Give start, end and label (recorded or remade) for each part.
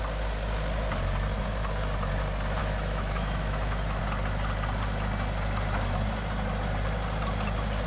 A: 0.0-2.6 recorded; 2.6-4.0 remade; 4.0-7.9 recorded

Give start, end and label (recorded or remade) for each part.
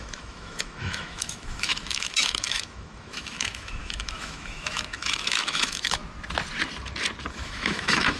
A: 0.0-6.0 remade; 6.0-7.3 recorded; 7.3-8.2 remade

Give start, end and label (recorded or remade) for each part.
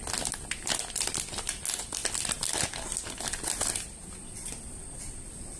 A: 0.0-5.6 recorded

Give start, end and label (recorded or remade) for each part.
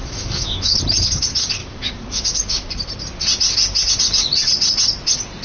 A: 0.0-0.8 remade; 0.8-1.6 recorded; 1.6-2.7 remade; 2.7-5.4 recorded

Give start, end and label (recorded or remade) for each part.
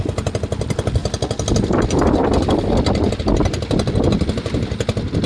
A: 0.0-5.3 recorded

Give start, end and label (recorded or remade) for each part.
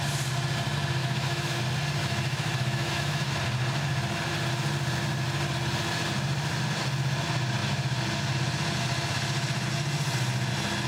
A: 0.0-1.0 recorded; 1.0-1.6 remade; 1.6-2.0 recorded; 2.0-3.3 remade; 3.3-10.9 recorded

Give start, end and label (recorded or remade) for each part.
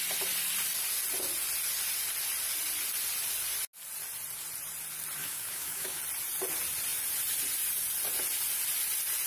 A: 0.0-5.2 recorded; 5.2-6.0 remade; 6.0-9.3 recorded